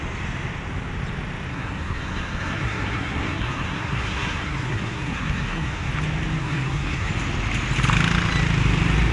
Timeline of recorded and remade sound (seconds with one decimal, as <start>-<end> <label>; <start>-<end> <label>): 0.0-1.5 recorded; 1.5-5.9 remade; 5.9-6.4 recorded; 6.4-7.1 remade; 7.1-9.1 recorded